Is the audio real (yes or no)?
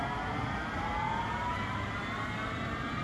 yes